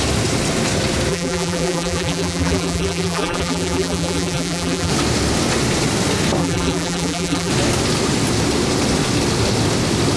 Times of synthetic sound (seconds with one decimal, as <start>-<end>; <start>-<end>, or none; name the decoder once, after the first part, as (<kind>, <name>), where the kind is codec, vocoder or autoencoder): 1.1-4.9 (vocoder, BigVGAN v2); 6.4-7.5

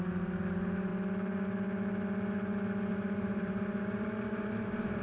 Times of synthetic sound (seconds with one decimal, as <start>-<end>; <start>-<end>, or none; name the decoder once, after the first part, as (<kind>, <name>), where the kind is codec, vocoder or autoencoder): 0.0-0.9 (vocoder, BigVGAN v2); 2.9-5.0

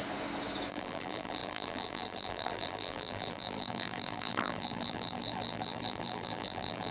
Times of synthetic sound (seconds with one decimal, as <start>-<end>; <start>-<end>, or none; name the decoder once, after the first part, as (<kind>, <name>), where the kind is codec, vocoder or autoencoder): 0.7-6.9 (vocoder, BigVGAN v2)

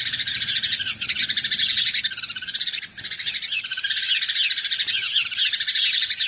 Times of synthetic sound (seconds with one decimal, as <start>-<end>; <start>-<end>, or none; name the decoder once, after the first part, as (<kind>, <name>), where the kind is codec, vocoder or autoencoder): none

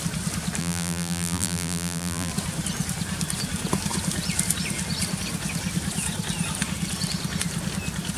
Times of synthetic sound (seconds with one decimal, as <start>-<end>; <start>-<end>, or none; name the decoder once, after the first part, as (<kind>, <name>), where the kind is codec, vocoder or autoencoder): 0.6-2.3 (vocoder, BigVGAN v2)

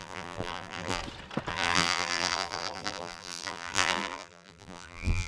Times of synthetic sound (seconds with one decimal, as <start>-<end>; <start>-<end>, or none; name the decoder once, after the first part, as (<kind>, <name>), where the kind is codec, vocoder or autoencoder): 0.0-1.0 (vocoder, BigVGAN v2); 1.5-5.3